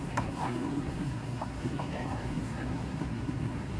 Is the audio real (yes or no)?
no